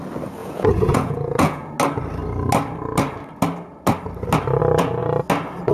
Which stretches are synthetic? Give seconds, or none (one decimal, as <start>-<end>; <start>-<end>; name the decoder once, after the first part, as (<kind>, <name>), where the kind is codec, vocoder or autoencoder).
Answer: 0.4-1.7 (vocoder, Vocos)